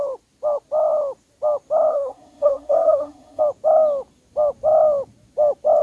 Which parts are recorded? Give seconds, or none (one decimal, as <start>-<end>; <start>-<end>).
0.0-1.9; 3.4-5.8